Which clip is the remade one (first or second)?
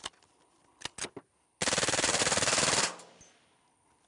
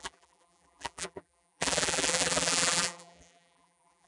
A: second